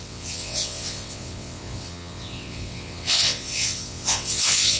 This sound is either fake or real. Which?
fake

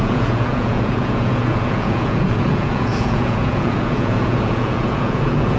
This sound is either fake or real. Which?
fake